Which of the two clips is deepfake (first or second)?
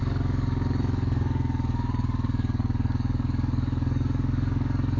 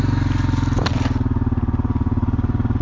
first